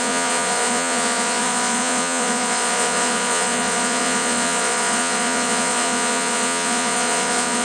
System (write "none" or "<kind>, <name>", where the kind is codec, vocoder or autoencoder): vocoder, Vocos